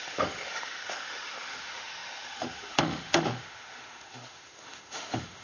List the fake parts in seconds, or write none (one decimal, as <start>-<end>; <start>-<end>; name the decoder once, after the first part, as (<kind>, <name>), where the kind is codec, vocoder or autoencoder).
0.0-5.4 (autoencoder, DAC-VAE)